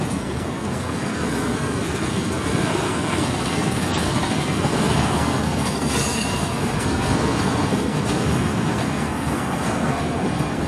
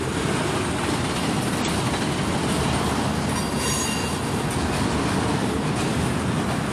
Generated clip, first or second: first